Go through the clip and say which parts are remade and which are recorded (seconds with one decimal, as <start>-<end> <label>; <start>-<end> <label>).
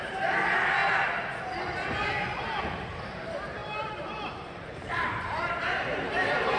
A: 0.0-0.8 remade; 0.8-2.6 recorded; 2.6-6.6 remade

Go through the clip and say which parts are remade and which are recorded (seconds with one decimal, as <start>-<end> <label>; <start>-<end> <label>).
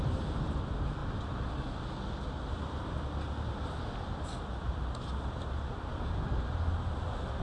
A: 0.0-7.4 recorded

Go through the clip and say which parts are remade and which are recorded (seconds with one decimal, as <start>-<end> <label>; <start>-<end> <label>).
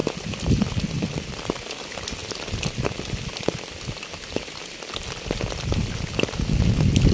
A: 0.0-7.1 recorded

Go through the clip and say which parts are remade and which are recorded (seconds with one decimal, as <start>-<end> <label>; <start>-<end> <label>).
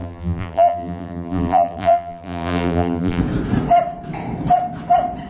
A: 0.0-3.2 remade; 3.2-5.3 recorded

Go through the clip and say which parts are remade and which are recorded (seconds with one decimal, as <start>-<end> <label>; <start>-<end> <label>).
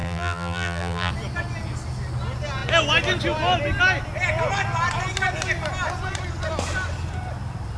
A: 0.0-1.1 remade; 1.1-7.8 recorded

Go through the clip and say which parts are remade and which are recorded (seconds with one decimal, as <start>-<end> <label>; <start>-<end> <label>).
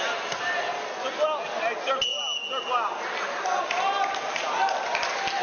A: 0.0-5.4 recorded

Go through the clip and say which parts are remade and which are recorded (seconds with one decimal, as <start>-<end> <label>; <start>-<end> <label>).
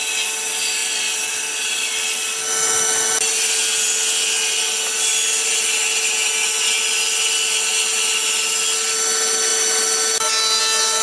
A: 0.0-0.8 recorded; 0.8-1.9 remade; 1.9-11.0 recorded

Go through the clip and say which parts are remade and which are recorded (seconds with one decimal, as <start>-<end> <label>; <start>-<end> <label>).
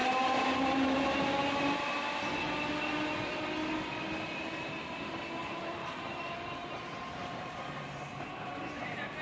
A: 0.0-1.2 remade; 1.2-5.4 recorded; 5.4-7.8 remade; 7.8-9.2 recorded